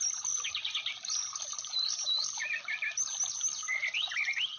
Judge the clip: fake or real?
real